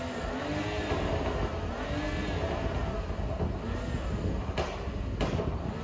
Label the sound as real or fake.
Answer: real